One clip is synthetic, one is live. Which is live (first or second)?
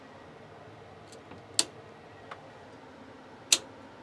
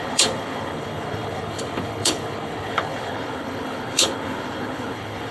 first